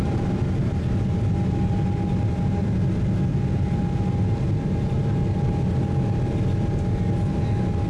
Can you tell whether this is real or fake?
real